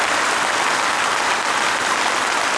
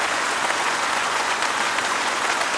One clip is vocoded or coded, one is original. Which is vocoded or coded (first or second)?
second